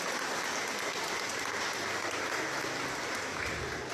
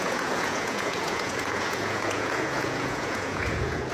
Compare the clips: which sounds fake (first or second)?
second